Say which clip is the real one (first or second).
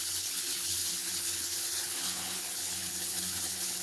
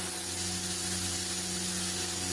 second